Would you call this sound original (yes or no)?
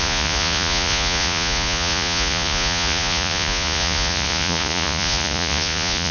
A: no